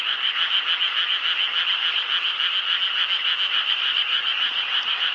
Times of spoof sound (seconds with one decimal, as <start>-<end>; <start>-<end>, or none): 0.0-0.4; 3.5-5.1